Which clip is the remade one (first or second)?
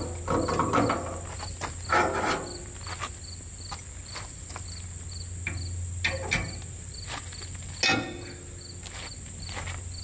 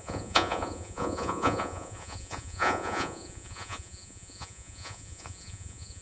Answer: second